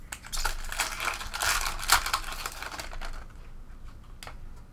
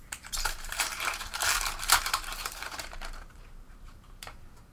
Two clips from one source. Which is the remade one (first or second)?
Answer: second